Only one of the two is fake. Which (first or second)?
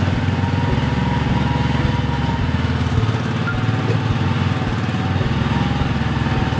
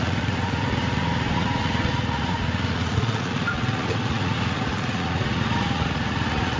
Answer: second